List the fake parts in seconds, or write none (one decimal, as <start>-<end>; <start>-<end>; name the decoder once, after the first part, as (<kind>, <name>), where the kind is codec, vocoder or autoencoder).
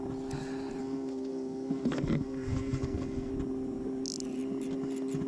0.8-3.3 (codec, SNAC)